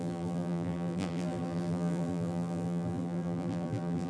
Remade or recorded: remade